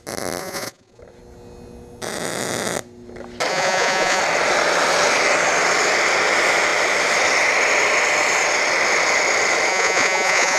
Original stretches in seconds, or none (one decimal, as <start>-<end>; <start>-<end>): 0.0-0.4; 1.0-3.5; 4.2-9.7